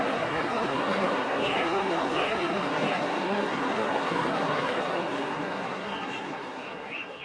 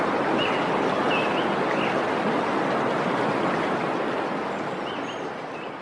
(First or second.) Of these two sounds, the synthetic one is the first